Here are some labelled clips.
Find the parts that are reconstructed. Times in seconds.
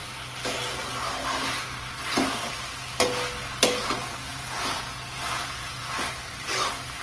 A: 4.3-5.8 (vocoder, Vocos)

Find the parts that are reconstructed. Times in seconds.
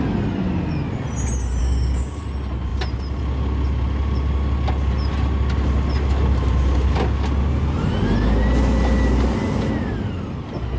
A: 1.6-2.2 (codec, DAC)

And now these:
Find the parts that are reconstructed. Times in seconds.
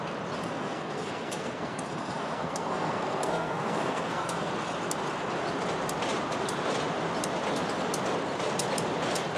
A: 0.4-4.5 (codec, SNAC)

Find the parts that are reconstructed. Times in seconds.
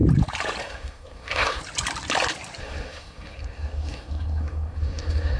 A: 0.6-1.6 (codec, SNAC); 2.6-5.4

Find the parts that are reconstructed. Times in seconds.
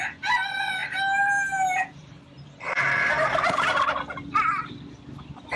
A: 0.8-4.0 (vocoder, BigVGAN v2)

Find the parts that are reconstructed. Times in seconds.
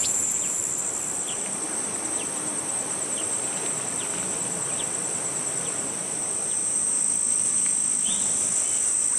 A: 0.0-0.6 (vocoder, Vocos); 6.2-6.9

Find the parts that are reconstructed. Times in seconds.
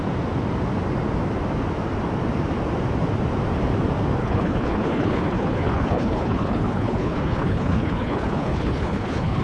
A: 4.2-9.4 (codec, HILCodec)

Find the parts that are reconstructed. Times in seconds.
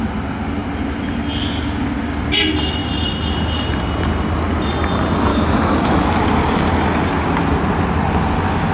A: 5.3-6.0 (autoencoder, DAC-VAE)